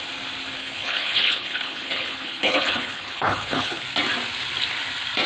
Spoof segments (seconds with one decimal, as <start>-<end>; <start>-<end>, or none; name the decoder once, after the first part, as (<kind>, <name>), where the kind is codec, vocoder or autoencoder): 0.6-3.8 (codec, HILCodec)